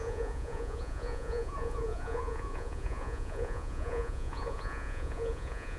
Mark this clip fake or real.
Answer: fake